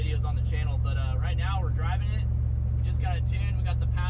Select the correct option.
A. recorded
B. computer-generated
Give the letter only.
A